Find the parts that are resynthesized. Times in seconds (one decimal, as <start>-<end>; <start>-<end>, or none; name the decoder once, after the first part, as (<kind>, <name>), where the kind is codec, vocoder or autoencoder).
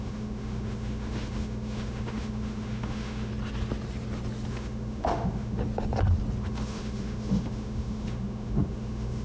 0.0-3.3 (autoencoder, DAC-VAE); 4.5-5.6; 6.4-9.2